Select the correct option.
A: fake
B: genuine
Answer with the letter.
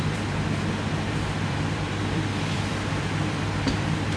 A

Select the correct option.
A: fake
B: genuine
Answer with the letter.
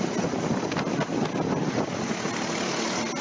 B